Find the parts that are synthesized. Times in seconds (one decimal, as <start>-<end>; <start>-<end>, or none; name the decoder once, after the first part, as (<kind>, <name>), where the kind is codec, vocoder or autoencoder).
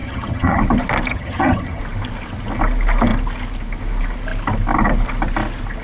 0.0-0.6 (vocoder, HiFi-GAN); 1.1-1.8